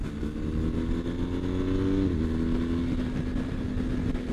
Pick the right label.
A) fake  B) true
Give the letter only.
B